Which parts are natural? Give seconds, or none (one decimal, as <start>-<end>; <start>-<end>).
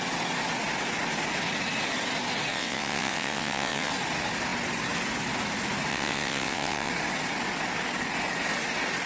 0.0-2.5; 3.9-5.9; 6.9-9.1